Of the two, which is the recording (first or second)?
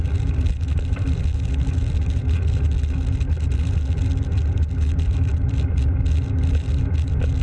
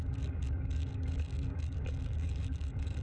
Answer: first